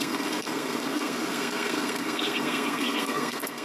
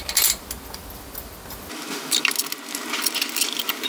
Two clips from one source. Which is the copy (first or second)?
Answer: first